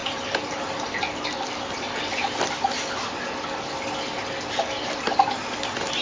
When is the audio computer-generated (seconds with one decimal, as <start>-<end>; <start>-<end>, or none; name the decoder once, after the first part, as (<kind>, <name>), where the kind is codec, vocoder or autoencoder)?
0.0-0.9 (vocoder, BigVGAN v2)